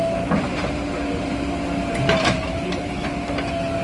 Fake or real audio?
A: real